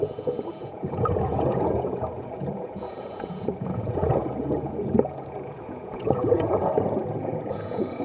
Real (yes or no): no